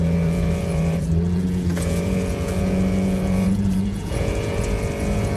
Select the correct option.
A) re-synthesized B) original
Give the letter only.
A